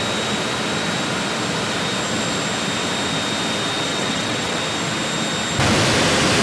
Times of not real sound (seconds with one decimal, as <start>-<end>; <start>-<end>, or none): 3.9-4.6